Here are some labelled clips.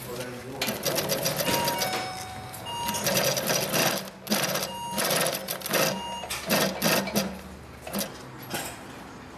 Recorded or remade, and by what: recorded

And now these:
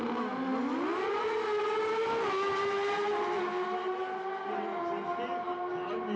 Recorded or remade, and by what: recorded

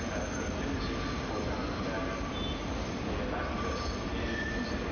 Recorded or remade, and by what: recorded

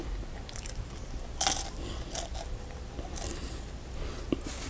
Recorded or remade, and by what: recorded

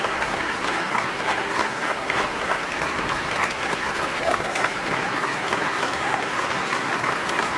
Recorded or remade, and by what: remade, codec, SNAC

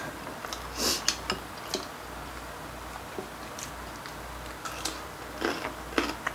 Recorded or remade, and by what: recorded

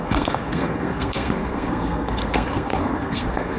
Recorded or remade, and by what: remade, codec, SNAC